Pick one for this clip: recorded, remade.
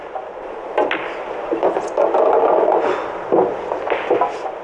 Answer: recorded